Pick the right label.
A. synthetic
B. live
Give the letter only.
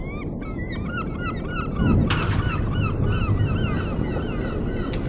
B